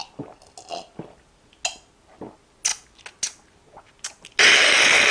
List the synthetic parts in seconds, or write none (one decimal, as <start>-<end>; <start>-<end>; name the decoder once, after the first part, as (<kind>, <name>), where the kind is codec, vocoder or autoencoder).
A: none